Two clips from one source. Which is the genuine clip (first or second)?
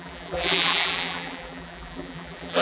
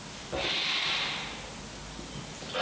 second